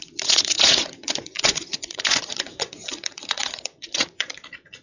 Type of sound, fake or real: fake